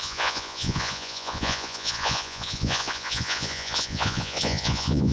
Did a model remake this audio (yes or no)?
yes